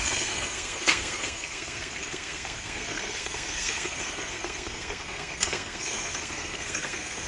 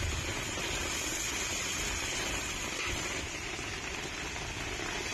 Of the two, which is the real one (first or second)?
second